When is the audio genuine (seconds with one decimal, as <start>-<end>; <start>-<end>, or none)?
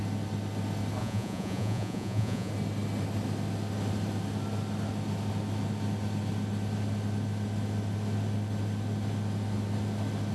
0.0-1.0; 2.5-10.3